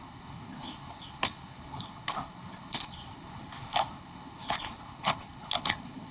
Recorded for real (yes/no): no